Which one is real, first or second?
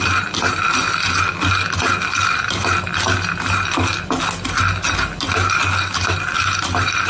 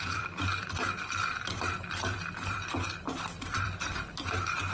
first